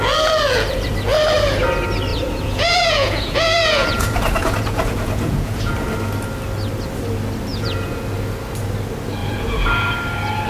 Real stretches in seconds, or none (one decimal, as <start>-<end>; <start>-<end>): 0.0-2.1; 5.7-7.5; 8.0-9.2; 9.9-10.5